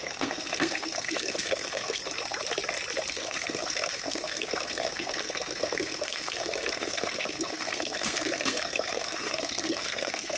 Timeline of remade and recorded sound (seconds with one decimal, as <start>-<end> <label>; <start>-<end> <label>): 0.0-2.0 remade; 2.0-3.1 recorded; 3.1-10.4 remade